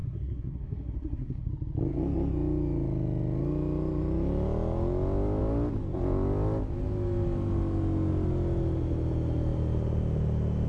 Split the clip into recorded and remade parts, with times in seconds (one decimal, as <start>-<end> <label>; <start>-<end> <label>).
0.0-1.5 remade; 1.5-10.7 recorded